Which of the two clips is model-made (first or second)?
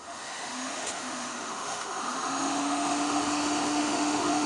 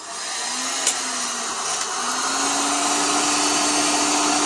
first